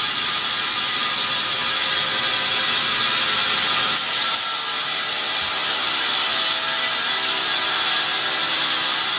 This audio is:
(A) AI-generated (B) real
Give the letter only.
B